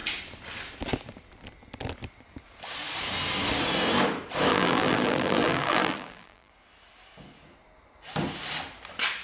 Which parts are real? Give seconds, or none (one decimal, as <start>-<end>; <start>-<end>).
0.0-4.5; 6.5-9.2